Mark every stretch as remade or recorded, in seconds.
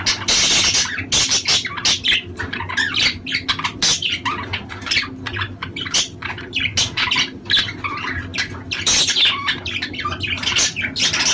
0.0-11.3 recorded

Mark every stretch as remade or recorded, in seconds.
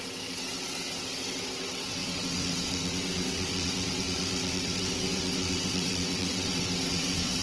0.0-7.4 remade